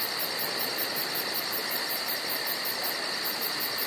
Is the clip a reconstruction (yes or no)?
no